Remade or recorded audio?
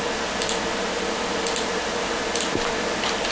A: recorded